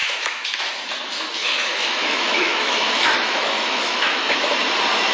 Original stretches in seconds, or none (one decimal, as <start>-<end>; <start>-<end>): 0.6-1.4; 4.5-5.1